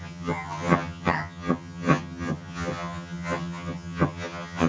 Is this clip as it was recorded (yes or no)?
no